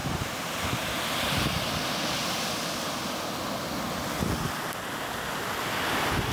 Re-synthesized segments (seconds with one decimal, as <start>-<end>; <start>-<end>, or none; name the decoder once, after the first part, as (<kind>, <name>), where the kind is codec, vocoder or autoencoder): 0.0-1.0 (vocoder, BigVGAN v2)

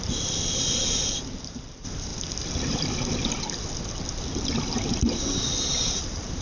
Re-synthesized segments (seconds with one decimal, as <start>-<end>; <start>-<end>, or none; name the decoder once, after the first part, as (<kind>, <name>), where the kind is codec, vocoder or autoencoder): 0.0-2.1 (vocoder, BigVGAN v2); 5.7-6.4

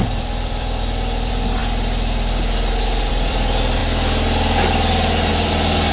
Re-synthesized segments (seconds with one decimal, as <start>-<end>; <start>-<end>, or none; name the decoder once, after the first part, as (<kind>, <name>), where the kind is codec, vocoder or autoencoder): 0.0-1.6 (vocoder, BigVGAN v2); 3.1-3.8; 5.3-5.9